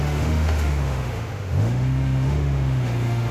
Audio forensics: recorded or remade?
remade